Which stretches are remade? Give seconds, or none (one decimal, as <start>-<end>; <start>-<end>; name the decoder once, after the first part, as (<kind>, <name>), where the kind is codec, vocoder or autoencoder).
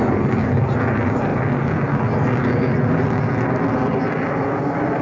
none